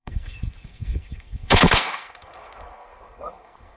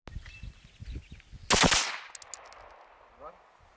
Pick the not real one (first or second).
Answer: first